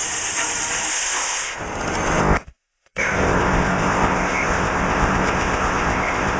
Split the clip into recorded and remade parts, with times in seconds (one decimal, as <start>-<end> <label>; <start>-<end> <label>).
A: 0.0-0.9 recorded; 0.9-1.6 remade; 1.6-2.2 recorded; 2.2-6.4 remade